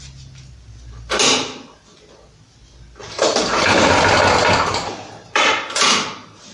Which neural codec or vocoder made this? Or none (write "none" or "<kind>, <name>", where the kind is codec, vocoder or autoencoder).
none